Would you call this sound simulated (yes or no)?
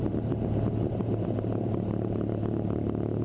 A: yes